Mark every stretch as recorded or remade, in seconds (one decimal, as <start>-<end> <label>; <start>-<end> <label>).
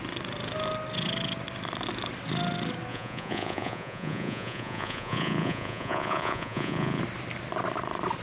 0.0-2.9 recorded; 2.9-7.0 remade; 7.0-8.2 recorded